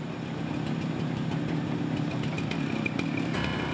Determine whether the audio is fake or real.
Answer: real